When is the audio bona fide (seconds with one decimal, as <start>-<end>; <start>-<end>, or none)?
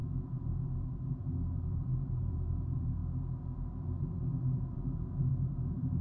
3.0-4.6